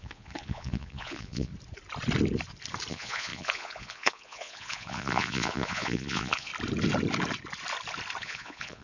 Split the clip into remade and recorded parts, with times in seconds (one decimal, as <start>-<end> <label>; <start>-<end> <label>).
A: 0.0-1.5 remade; 1.5-2.9 recorded; 2.9-6.5 remade; 6.5-8.2 recorded; 8.2-8.8 remade